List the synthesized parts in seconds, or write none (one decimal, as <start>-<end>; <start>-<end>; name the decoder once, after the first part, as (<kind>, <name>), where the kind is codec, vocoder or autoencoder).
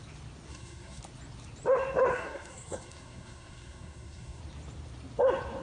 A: 0.5-1.0 (codec, SNAC); 2.1-4.4